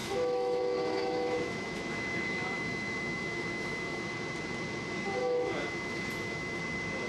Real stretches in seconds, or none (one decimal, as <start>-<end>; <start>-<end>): 0.6-1.0; 4.1-5.2; 6.6-7.1